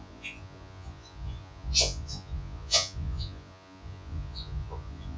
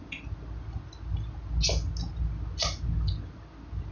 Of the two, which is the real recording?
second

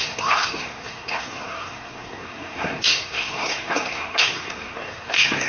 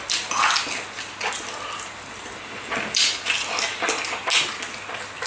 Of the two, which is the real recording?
second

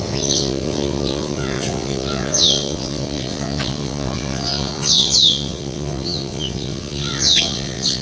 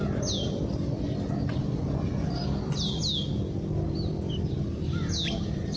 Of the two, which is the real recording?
second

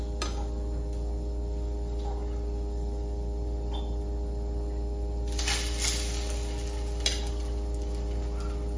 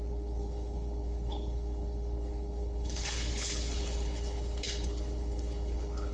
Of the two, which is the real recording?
first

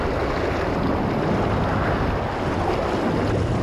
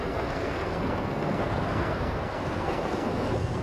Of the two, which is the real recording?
first